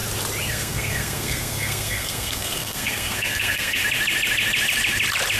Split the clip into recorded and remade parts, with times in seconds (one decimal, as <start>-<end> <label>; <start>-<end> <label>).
0.0-0.5 recorded; 0.5-3.8 remade; 3.8-5.4 recorded